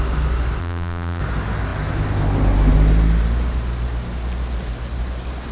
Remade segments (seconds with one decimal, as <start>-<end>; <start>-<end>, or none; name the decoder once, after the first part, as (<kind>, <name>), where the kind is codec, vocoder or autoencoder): 0.6-1.2 (vocoder, BigVGAN v2)